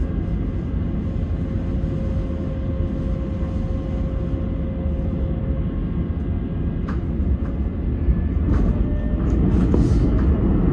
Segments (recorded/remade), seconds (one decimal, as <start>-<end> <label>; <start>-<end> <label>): 0.0-10.7 recorded